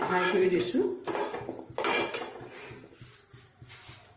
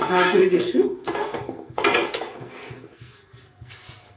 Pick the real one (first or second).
first